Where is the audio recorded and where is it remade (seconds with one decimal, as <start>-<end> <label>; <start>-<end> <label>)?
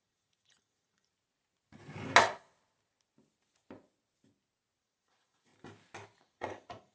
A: 0.0-1.1 remade; 1.1-4.8 recorded; 4.8-5.5 remade; 5.5-6.2 recorded; 6.2-6.9 remade